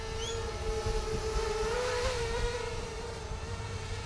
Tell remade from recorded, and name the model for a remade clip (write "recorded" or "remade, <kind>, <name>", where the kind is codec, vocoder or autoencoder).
remade, vocoder, BigVGAN v2